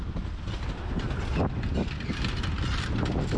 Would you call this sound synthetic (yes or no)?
no